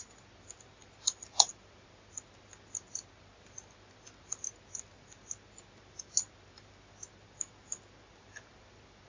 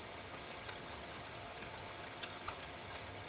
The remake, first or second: second